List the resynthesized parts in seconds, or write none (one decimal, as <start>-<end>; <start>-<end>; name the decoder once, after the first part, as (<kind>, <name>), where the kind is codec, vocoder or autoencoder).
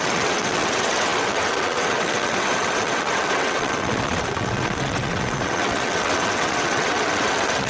0.0-7.7 (vocoder, WaveNeXt)